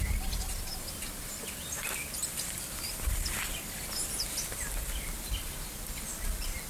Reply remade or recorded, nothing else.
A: remade